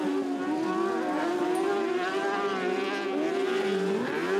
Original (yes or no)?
yes